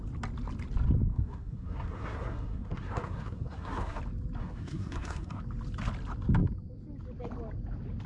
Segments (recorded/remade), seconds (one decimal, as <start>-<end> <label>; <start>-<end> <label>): 0.0-1.1 recorded; 1.1-4.0 remade; 4.0-4.4 recorded; 4.4-5.4 remade; 5.4-8.1 recorded